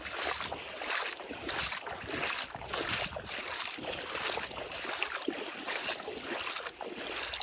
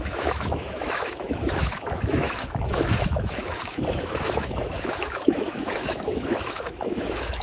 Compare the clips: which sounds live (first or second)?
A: first